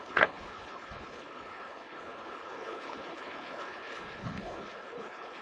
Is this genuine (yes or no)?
no